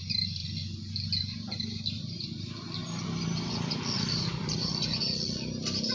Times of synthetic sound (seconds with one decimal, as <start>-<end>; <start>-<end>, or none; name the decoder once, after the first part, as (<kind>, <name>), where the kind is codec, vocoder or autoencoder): 0.0-0.4 (vocoder, BigVGAN v2); 1.2-5.9